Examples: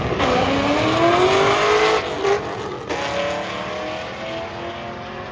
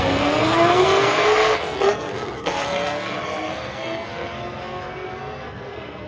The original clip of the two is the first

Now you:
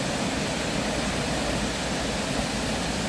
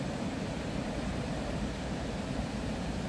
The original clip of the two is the first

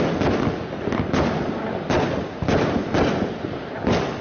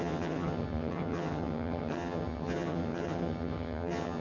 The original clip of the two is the first